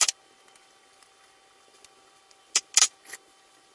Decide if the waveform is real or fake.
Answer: real